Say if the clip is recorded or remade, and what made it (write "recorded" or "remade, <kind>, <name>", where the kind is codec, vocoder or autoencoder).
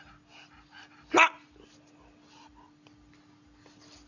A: recorded